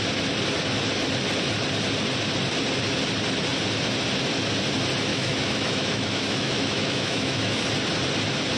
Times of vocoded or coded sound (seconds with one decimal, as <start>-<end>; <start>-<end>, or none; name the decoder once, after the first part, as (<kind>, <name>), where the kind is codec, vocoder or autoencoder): 5.1-7.6 (autoencoder, DAC-VAE)